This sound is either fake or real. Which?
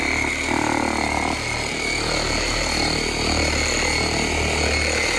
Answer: real